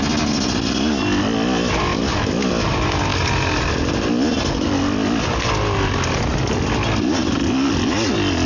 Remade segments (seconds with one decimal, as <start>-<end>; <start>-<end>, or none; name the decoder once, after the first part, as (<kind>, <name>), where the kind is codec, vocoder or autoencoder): none